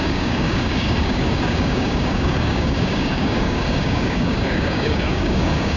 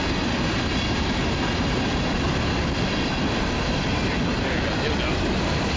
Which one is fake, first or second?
first